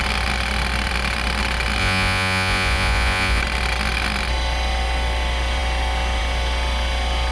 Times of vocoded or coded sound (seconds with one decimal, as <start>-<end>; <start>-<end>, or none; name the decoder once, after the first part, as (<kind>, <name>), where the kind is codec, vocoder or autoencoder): 1.8-3.4 (vocoder, Vocos)